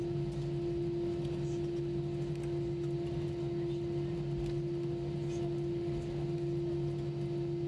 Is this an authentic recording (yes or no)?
yes